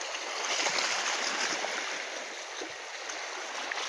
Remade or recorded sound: recorded